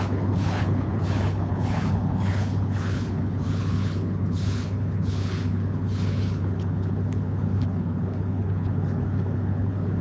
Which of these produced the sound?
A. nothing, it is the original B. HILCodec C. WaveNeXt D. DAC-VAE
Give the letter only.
B